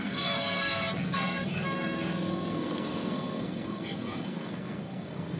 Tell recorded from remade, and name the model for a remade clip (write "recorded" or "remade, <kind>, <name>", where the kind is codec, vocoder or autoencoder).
remade, codec, SNAC